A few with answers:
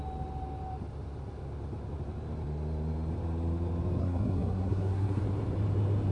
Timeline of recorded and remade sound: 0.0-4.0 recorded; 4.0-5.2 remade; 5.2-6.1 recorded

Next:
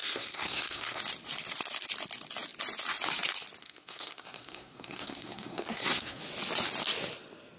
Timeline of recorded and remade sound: 0.0-1.0 remade; 1.0-3.6 recorded; 3.6-6.2 remade; 6.2-7.6 recorded

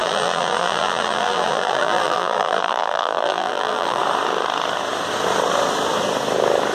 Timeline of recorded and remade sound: 0.0-4.0 remade; 4.0-6.7 recorded

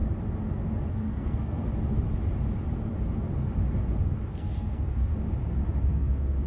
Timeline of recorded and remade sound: 0.0-0.9 recorded; 0.9-1.7 remade; 1.7-4.3 recorded; 4.3-5.1 remade; 5.1-5.8 recorded; 5.8-6.5 remade